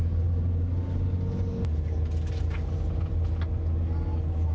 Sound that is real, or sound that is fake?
real